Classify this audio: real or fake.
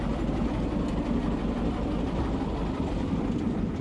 real